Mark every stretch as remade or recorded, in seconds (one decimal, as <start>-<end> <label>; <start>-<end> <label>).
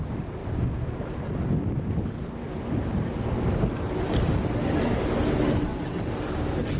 0.0-6.8 recorded